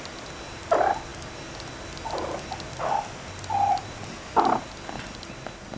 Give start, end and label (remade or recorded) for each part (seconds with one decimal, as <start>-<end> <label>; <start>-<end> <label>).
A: 0.0-5.8 recorded